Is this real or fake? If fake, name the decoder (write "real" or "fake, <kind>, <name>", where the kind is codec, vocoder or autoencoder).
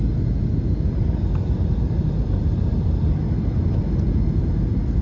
real